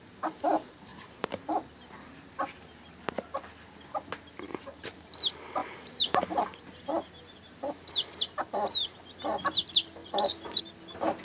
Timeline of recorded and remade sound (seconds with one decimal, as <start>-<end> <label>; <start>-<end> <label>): 0.0-0.9 recorded; 0.9-1.4 remade; 1.4-4.5 recorded; 4.5-5.1 remade; 5.1-5.6 recorded; 5.6-7.9 remade; 7.9-10.0 recorded; 10.0-10.6 remade; 10.6-11.2 recorded